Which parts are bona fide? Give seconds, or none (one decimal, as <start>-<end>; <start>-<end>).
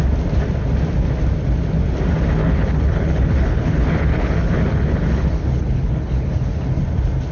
0.0-2.4; 6.8-7.3